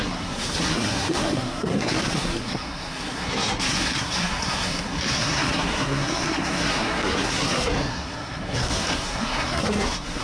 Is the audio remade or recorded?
remade